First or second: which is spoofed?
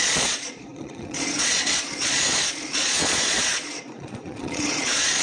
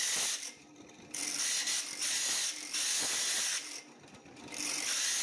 first